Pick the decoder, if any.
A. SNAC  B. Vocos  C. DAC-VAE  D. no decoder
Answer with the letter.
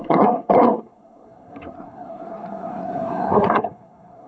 A